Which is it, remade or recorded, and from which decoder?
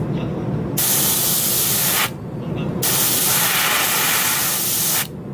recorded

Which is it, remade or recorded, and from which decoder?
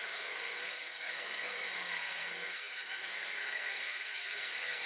remade, codec, SNAC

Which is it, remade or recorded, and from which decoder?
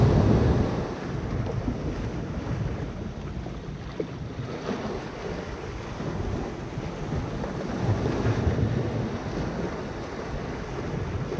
recorded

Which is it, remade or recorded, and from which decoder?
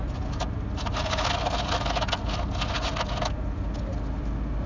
recorded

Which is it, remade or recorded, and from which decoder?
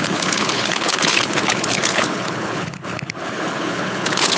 remade, codec, HILCodec